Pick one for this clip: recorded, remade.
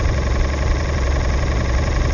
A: recorded